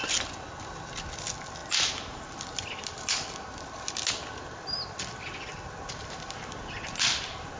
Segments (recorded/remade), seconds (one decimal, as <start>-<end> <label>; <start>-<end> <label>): 0.0-7.6 recorded